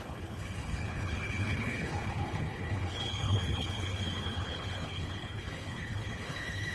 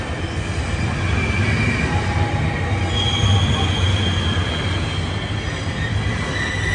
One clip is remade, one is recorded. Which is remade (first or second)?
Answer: first